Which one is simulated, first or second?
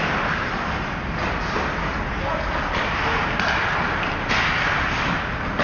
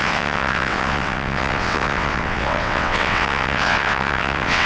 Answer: second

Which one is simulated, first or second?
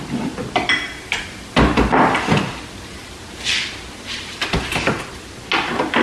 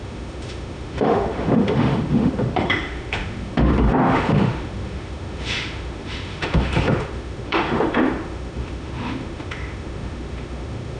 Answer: second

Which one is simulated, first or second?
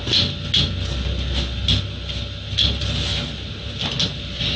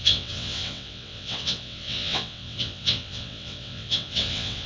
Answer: second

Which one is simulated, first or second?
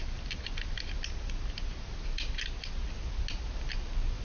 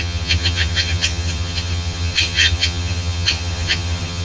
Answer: second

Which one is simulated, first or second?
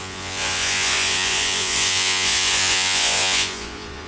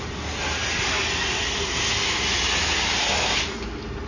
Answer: first